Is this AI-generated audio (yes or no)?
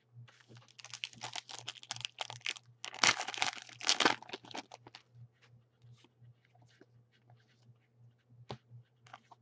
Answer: no